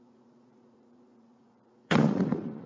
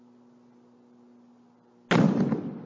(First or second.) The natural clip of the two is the second